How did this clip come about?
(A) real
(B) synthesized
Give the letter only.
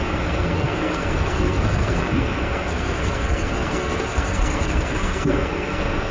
B